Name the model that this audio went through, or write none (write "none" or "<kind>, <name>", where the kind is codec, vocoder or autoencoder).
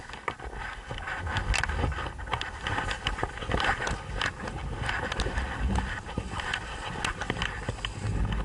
none